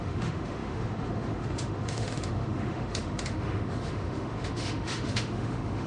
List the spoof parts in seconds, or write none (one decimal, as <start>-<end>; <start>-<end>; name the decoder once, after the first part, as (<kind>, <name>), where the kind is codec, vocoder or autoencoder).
0.0-5.9 (autoencoder, DAC-VAE)